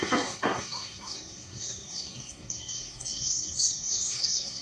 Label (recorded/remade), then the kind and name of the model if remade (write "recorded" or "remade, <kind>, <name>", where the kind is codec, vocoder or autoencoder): remade, codec, SNAC